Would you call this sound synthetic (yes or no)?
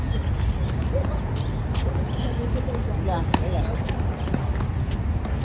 no